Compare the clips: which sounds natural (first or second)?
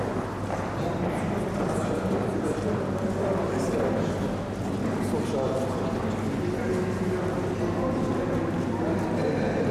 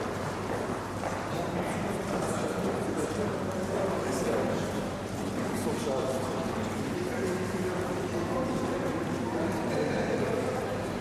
first